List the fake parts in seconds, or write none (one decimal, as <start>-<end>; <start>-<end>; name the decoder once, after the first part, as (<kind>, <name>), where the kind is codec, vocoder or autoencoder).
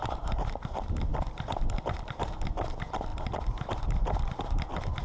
none